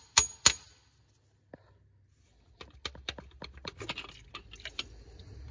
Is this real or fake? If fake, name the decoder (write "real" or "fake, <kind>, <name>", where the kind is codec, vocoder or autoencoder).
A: real